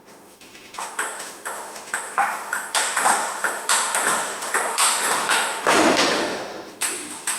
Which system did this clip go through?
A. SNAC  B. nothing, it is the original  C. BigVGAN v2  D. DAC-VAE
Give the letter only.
D